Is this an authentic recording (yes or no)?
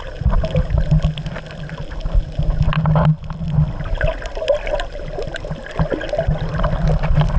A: yes